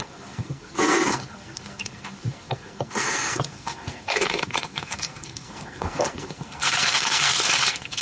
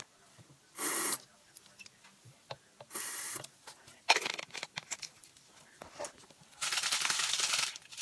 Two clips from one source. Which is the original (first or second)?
second